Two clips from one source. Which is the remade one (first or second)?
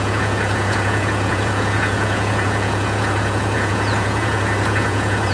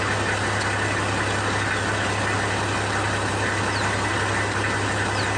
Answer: first